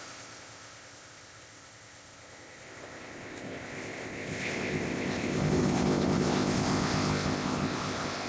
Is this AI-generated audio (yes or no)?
yes